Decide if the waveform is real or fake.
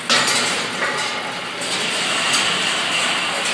real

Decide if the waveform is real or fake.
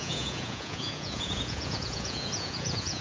fake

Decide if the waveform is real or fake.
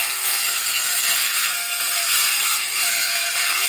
fake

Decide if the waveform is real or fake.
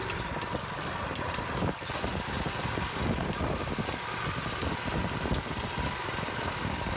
real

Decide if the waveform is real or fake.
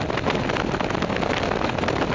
real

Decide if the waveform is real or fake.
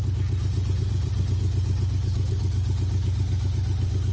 real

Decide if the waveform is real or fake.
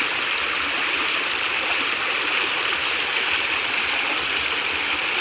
real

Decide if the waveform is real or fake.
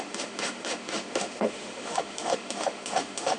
fake